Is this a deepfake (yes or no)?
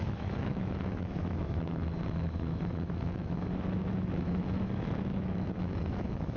yes